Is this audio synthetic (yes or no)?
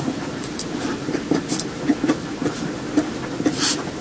no